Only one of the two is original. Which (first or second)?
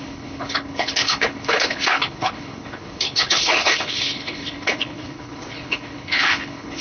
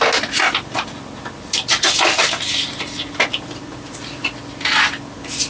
second